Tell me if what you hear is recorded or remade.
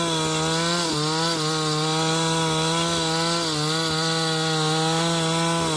recorded